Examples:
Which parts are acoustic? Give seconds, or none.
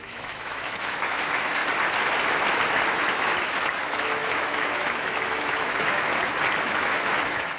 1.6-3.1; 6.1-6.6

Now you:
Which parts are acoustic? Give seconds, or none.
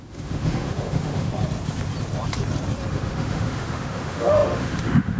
1.3-2.9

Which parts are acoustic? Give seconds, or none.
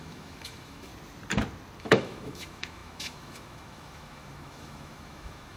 0.9-1.8